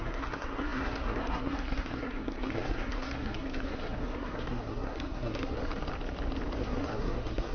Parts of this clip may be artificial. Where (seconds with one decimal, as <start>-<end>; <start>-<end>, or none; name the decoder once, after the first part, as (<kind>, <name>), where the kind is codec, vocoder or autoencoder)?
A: 0.0-5.6 (codec, SNAC); 6.6-7.5